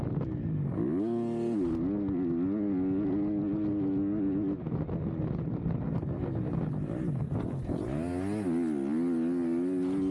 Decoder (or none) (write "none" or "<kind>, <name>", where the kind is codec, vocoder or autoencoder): none